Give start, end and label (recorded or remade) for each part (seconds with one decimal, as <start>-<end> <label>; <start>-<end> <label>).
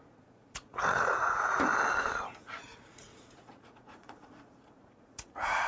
0.0-1.7 remade; 1.7-2.4 recorded; 2.4-5.7 remade